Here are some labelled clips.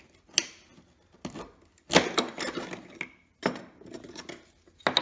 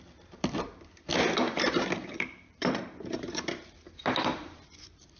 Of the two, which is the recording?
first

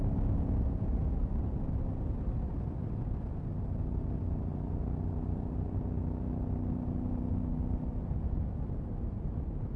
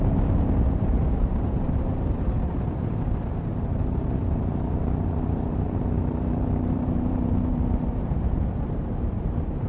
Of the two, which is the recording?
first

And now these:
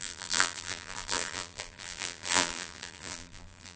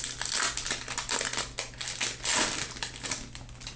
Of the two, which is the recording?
second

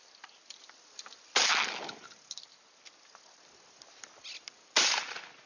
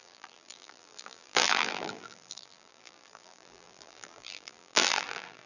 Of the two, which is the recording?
first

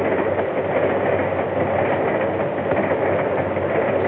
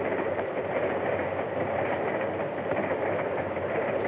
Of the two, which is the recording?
first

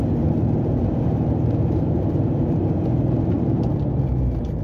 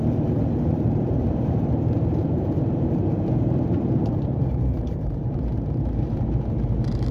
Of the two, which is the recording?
first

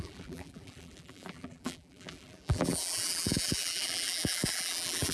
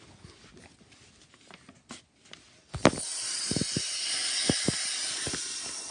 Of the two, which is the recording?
second